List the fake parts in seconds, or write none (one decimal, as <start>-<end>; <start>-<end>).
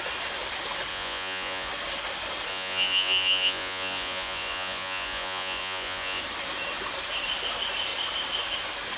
0.9-1.7; 2.5-6.2